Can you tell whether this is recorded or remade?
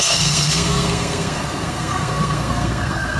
remade